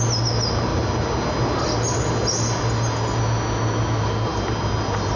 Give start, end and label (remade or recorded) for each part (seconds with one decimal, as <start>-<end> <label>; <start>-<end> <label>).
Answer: 0.0-5.2 recorded